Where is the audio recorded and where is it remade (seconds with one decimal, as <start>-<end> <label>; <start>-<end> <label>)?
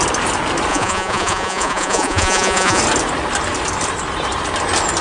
0.0-0.7 recorded; 0.7-2.8 remade; 2.8-5.0 recorded